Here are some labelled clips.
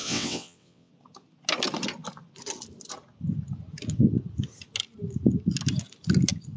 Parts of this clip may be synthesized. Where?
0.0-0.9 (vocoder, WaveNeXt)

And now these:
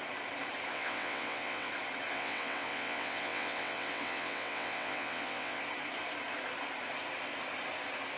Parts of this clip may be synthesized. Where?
0.7-1.7 (vocoder, WaveNeXt); 2.1-5.6